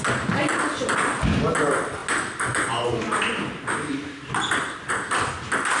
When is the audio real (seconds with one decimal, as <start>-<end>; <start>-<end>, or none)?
0.0-5.8